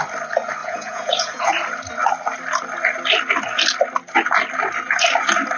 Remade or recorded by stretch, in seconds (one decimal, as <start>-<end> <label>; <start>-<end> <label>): 0.0-0.6 recorded; 0.6-1.5 remade; 1.5-5.6 recorded